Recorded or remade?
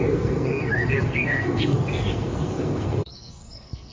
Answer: remade